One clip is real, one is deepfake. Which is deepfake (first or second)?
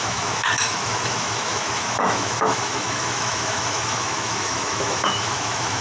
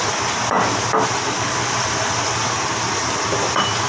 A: first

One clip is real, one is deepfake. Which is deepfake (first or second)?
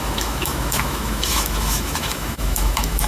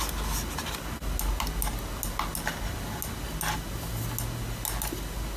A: first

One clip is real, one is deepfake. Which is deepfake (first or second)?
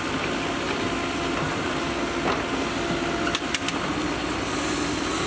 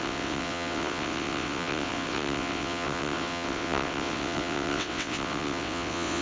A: second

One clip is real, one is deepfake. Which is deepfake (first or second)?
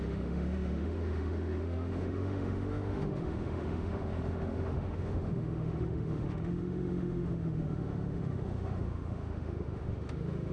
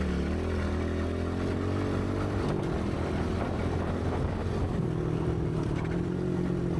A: first